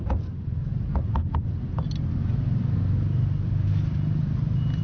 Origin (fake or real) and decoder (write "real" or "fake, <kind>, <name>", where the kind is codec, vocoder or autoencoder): real